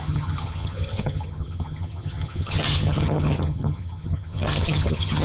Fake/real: fake